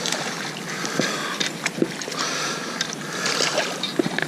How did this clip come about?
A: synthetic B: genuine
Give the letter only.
B